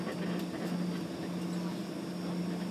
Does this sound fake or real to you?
real